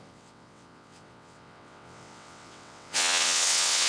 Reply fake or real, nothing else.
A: fake